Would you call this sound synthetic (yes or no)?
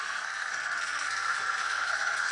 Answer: yes